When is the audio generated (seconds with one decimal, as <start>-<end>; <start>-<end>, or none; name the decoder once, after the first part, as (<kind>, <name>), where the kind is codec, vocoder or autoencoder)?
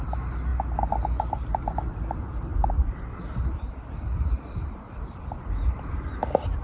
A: 0.0-0.5 (vocoder, BigVGAN v2); 1.2-6.6